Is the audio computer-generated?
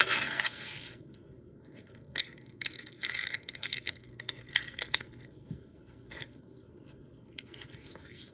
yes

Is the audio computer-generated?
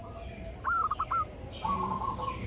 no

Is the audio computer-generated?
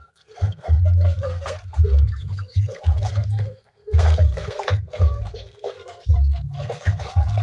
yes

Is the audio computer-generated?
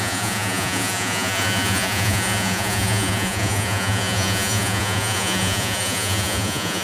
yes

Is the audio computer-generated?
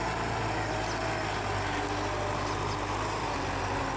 no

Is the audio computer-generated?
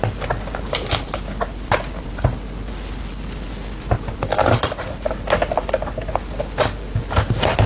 no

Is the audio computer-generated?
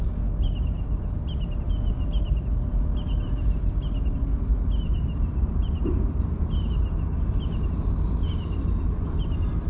no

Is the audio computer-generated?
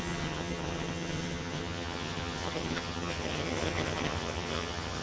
yes